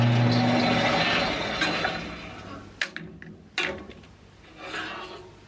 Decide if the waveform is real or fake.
real